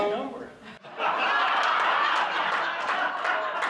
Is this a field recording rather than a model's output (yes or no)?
yes